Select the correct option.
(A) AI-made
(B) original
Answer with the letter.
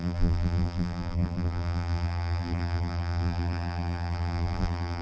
A